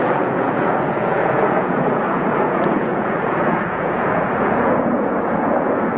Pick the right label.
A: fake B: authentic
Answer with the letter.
A